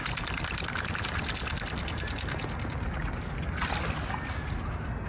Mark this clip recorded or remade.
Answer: recorded